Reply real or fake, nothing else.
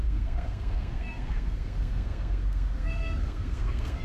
fake